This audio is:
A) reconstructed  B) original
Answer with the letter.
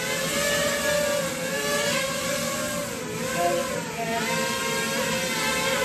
B